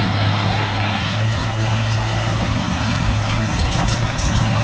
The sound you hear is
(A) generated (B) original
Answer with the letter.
A